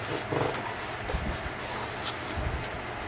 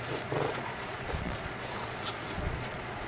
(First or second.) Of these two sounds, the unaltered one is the first